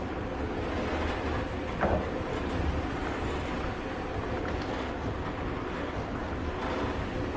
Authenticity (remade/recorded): recorded